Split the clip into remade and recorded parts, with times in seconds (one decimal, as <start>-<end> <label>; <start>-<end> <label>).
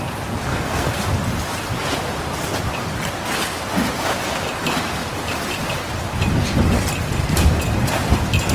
0.0-0.5 recorded; 0.5-1.1 remade; 1.1-8.5 recorded